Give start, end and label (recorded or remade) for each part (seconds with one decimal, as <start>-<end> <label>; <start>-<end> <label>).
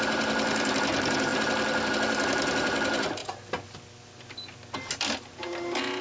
0.0-3.2 remade; 3.2-6.0 recorded